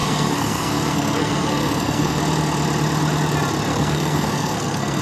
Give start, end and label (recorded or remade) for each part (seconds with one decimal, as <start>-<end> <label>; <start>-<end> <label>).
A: 0.0-2.2 remade; 2.2-3.7 recorded; 3.7-5.0 remade